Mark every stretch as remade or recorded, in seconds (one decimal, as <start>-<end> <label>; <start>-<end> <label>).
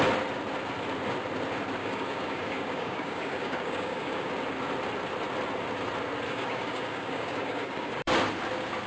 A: 0.0-1.8 recorded; 1.8-4.3 remade; 4.3-6.3 recorded; 6.3-8.1 remade; 8.1-8.9 recorded